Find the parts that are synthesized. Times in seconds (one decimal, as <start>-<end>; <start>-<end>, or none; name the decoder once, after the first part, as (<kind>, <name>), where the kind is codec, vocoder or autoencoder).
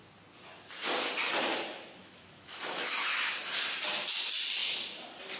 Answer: 2.0-3.3 (autoencoder, DAC-VAE)